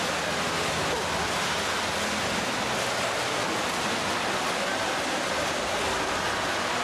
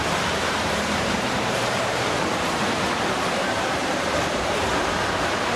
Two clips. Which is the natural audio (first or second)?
first